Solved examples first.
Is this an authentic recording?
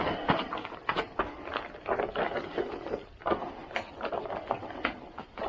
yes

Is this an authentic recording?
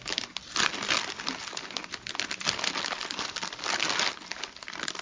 yes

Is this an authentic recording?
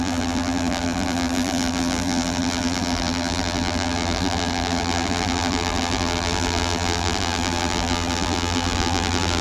no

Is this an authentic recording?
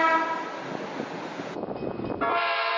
yes